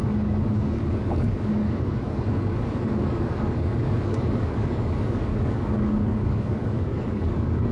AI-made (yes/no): yes